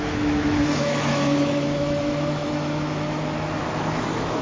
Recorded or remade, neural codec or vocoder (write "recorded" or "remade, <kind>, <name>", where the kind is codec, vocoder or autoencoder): remade, autoencoder, DAC-VAE